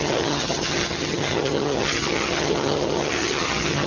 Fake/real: fake